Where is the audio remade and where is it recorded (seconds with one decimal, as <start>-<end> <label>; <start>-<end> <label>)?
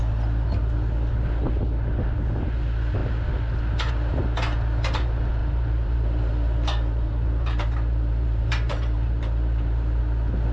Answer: 0.0-5.4 recorded; 5.4-10.0 remade; 10.0-10.5 recorded